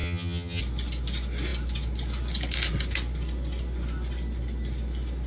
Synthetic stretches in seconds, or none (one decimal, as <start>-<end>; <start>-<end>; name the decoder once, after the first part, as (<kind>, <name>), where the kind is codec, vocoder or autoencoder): 0.0-0.6 (vocoder, HiFi-GAN)